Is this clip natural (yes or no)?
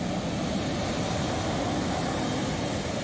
yes